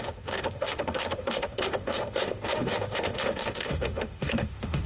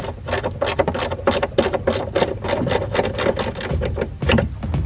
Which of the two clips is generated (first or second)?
first